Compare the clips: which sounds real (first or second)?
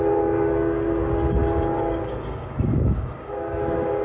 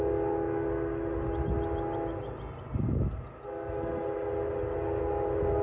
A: second